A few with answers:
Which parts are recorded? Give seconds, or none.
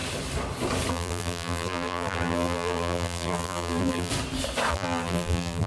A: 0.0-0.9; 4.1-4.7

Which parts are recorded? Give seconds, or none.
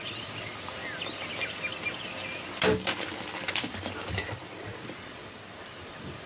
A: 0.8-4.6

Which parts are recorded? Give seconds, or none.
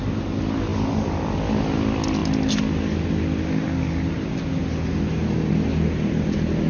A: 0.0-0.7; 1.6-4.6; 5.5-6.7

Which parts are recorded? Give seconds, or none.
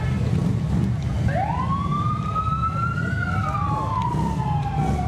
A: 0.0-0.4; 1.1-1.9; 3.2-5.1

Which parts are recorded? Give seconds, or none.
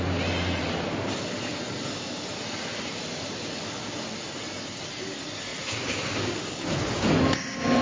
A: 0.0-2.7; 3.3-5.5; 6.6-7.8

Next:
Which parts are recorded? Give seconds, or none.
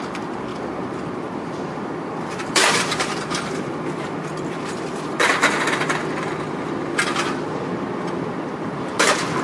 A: 5.3-8.5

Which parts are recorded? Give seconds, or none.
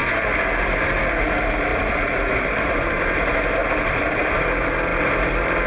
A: 1.0-1.7; 2.4-3.6; 4.3-4.9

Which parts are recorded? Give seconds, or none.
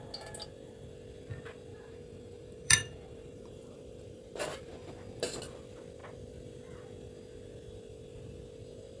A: 0.0-1.7; 4.9-9.0